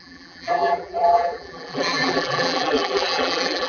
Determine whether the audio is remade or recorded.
remade